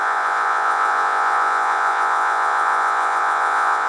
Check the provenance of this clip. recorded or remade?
remade